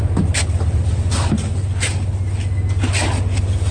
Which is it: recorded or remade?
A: recorded